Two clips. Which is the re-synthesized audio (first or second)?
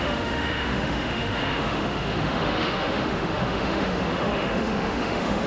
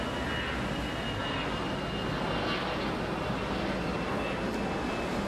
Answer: first